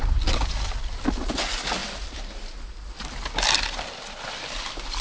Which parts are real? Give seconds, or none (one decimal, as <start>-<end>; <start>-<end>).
0.0-5.0